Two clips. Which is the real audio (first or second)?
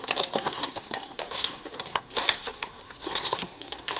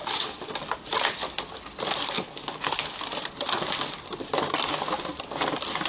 second